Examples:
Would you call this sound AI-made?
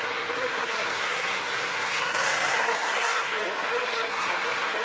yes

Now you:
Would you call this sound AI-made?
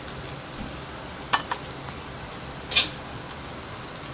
no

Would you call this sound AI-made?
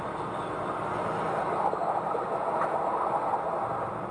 no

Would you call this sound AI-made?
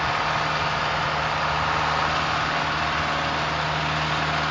no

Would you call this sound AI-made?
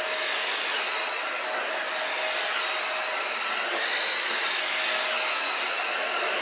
no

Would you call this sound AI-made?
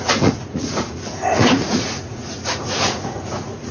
yes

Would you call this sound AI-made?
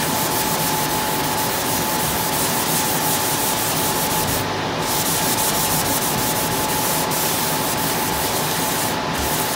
no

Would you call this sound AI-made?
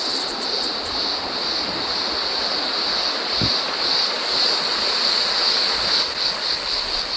no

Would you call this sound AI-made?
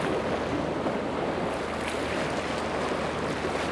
no